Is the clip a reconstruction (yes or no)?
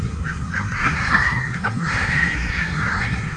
yes